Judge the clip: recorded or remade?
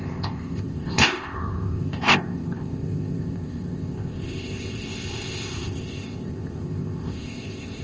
remade